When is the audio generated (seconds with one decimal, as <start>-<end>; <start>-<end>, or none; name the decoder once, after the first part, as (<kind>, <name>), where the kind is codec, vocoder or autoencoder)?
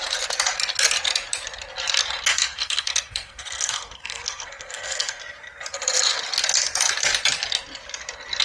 2.3-5.2 (codec, SNAC)